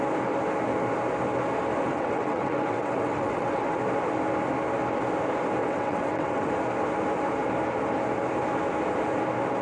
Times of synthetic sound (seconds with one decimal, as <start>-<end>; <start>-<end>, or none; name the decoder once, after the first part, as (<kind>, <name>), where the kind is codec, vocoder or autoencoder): 1.9-3.8 (vocoder, WaveNeXt); 5.6-6.5